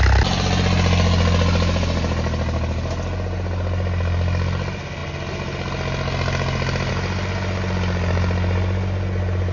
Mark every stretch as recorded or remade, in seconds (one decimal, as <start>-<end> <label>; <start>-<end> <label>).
0.0-9.5 recorded